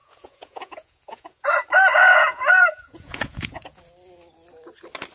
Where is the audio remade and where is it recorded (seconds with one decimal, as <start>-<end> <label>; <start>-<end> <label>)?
0.0-1.5 remade; 1.5-2.0 recorded; 2.0-3.8 remade; 3.8-5.1 recorded